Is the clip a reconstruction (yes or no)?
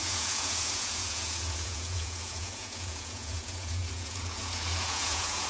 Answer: yes